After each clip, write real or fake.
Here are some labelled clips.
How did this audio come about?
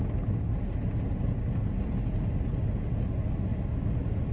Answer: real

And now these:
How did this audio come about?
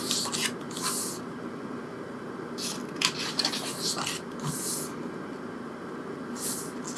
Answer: real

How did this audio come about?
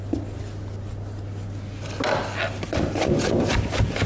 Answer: real